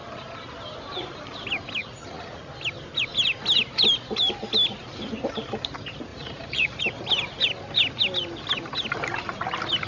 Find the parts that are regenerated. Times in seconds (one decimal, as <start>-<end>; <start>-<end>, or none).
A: 1.8-2.5; 6.1-6.8